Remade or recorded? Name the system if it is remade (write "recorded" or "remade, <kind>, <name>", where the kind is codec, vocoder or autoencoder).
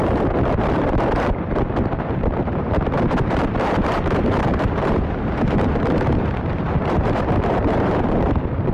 remade, vocoder, BigVGAN v2